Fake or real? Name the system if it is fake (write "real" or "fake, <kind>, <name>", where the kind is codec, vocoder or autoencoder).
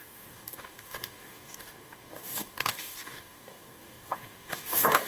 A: fake, codec, DAC